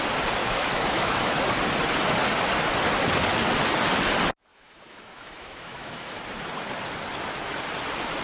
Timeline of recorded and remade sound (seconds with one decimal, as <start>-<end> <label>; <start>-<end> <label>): 0.0-0.4 recorded; 0.4-1.5 remade; 1.5-4.5 recorded; 4.5-6.2 remade; 6.2-8.2 recorded